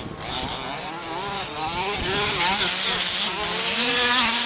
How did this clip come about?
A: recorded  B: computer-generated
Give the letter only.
A